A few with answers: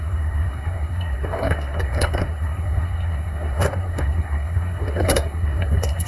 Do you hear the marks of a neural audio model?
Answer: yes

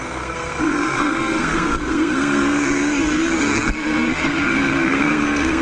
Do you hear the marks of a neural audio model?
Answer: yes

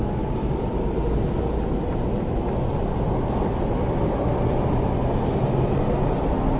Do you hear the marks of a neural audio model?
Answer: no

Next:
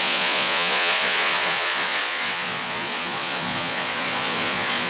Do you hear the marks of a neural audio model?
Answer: yes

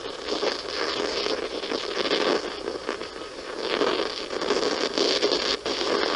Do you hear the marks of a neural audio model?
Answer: yes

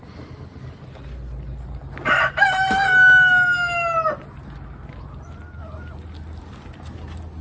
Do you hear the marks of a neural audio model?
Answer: no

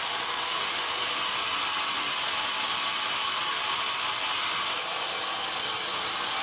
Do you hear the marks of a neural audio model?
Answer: no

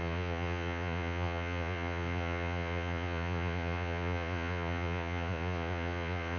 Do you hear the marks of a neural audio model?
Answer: yes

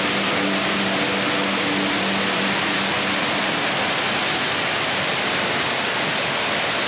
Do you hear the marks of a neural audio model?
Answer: no